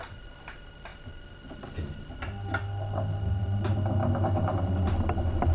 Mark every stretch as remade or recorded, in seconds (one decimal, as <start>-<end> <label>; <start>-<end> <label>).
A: 0.0-5.5 recorded